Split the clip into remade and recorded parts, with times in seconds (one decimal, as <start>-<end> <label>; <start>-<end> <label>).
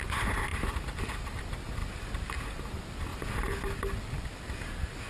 0.0-0.5 recorded; 0.5-1.0 remade; 1.0-1.8 recorded; 1.8-2.3 remade; 2.3-3.1 recorded; 3.1-3.6 remade; 3.6-5.1 recorded